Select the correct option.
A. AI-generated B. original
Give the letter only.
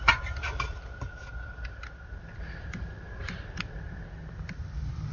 B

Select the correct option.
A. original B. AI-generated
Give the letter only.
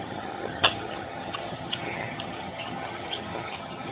B